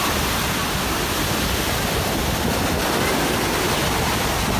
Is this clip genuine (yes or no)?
yes